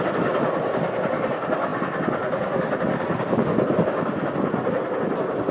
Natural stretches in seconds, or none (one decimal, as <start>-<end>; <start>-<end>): 0.0-5.5